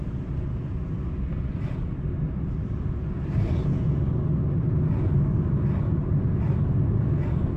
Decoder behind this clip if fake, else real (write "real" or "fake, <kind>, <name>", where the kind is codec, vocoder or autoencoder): real